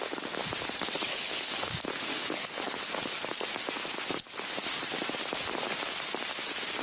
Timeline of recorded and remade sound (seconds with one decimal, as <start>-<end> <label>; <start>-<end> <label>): 0.0-1.1 recorded; 1.1-1.7 remade; 1.7-2.1 recorded; 2.1-2.8 remade; 2.8-6.8 recorded

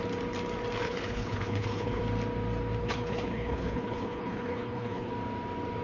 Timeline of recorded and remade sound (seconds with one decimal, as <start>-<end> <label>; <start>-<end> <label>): 0.0-0.8 recorded; 0.8-2.0 remade; 2.0-2.8 recorded; 2.8-5.1 remade; 5.1-5.8 recorded

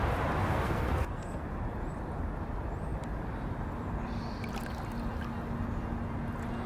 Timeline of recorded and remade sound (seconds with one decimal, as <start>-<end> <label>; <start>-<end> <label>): 0.0-0.5 recorded; 0.5-1.4 remade; 1.4-6.7 recorded

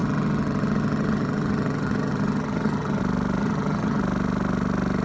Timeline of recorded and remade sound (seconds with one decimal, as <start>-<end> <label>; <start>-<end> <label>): 0.0-3.0 remade; 3.0-3.4 recorded; 3.4-4.0 remade; 4.0-5.0 recorded

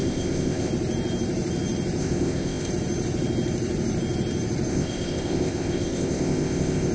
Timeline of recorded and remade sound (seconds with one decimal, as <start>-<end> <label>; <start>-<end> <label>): 0.0-0.7 remade; 0.7-2.0 recorded; 2.0-2.7 remade; 2.7-4.7 recorded; 4.7-6.9 remade

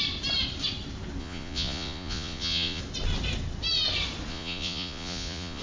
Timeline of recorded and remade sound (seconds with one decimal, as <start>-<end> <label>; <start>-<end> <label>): 0.0-1.2 recorded; 1.2-2.8 remade; 2.8-4.3 recorded; 4.3-5.6 remade